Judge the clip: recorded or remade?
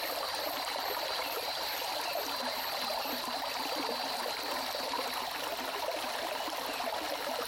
recorded